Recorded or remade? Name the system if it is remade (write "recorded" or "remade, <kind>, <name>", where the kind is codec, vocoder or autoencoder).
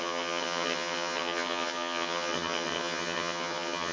remade, vocoder, HiFi-GAN